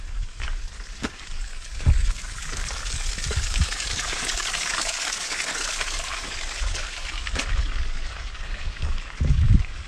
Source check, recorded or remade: remade